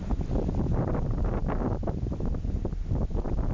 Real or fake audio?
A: real